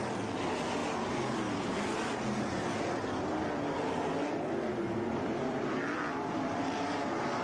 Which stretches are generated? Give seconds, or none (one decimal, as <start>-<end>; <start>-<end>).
none